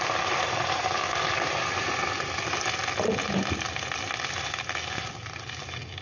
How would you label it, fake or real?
real